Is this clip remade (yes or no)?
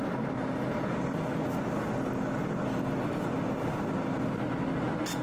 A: no